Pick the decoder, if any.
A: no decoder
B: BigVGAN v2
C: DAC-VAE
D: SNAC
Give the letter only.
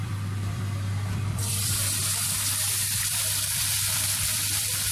B